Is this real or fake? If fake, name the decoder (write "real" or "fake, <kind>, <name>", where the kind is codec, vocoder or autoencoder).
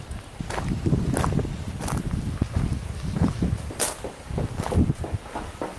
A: real